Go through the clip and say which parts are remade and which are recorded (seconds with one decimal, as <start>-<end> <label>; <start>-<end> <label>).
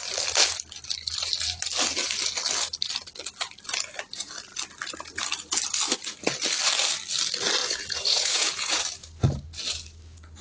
0.0-7.6 recorded; 7.6-8.8 remade; 8.8-10.4 recorded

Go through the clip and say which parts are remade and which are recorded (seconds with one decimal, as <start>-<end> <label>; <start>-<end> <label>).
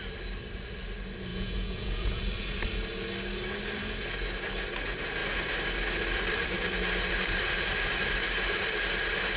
0.0-1.3 recorded; 1.3-2.2 remade; 2.2-9.4 recorded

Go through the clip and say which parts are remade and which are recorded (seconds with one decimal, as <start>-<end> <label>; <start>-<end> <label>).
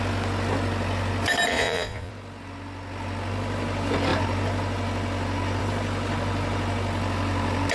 0.0-1.5 recorded; 1.5-2.1 remade; 2.1-7.7 recorded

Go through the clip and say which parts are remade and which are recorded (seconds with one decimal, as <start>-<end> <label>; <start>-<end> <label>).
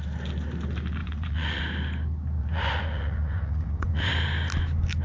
0.0-1.0 recorded; 1.0-1.6 remade; 1.6-2.4 recorded; 2.4-4.1 remade; 4.1-5.0 recorded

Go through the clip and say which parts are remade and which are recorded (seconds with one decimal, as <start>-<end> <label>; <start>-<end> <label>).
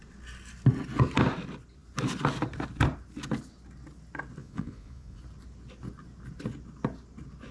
0.0-4.4 recorded; 4.4-5.2 remade; 5.2-7.5 recorded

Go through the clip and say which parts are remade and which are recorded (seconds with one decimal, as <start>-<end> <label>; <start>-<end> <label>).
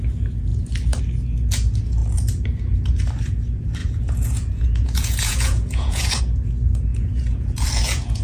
0.0-3.8 recorded; 3.8-6.2 remade; 6.2-6.9 recorded; 6.9-8.2 remade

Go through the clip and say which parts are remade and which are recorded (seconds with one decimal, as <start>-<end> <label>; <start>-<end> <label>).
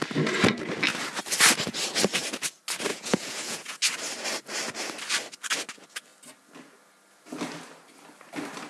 0.0-2.9 recorded; 2.9-3.8 remade; 3.8-8.7 recorded